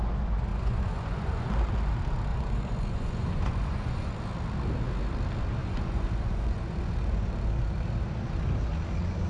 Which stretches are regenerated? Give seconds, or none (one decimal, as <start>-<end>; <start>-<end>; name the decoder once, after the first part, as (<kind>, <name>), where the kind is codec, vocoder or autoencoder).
0.5-1.5 (vocoder, Vocos); 2.3-4.1; 5.6-7.3